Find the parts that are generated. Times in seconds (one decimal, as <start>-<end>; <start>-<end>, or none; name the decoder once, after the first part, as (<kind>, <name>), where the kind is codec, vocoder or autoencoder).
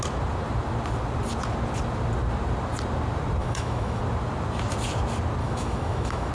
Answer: 3.4-4.0 (autoencoder, DAC-VAE); 5.4-6.3